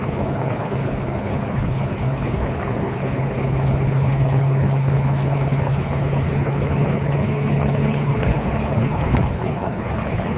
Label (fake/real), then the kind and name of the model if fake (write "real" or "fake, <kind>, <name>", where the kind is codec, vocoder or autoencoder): fake, codec, HILCodec